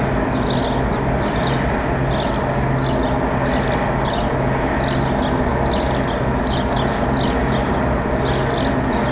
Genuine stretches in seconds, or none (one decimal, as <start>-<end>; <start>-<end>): 0.0-9.1